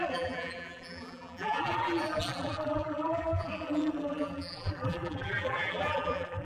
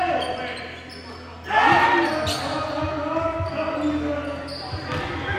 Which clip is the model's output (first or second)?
first